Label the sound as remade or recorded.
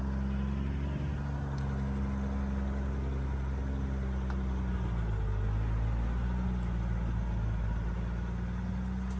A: recorded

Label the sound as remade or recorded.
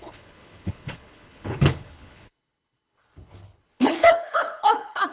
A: remade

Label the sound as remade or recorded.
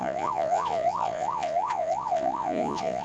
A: remade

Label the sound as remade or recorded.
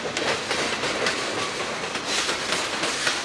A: recorded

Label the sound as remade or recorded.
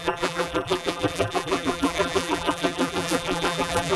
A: remade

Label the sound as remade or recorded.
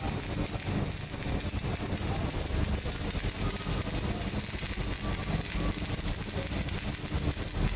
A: recorded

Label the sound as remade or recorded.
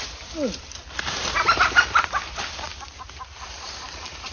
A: recorded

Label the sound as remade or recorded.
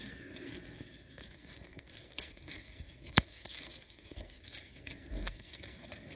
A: remade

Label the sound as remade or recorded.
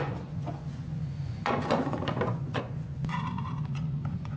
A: remade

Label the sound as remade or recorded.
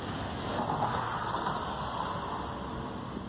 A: recorded